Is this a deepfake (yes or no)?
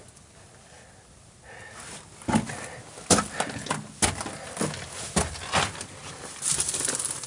no